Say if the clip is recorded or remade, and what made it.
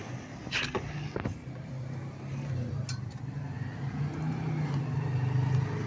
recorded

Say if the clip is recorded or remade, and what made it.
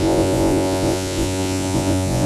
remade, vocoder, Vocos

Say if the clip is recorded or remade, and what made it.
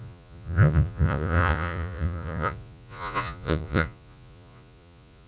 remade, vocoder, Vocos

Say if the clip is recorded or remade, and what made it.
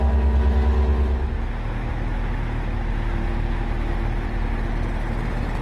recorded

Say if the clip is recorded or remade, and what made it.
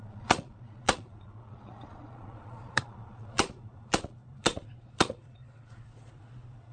remade, vocoder, Vocos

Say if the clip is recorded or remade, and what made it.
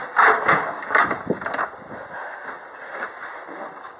recorded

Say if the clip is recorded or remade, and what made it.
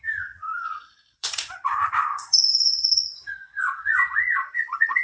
remade, vocoder, Vocos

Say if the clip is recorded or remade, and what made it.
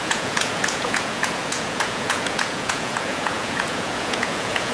remade, vocoder, Vocos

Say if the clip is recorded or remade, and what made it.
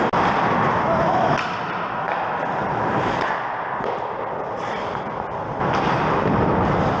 recorded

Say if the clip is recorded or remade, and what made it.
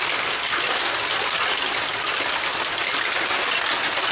recorded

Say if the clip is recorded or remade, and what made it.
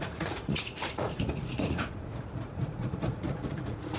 remade, vocoder, Vocos